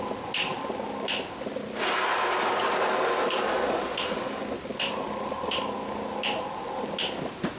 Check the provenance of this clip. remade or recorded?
recorded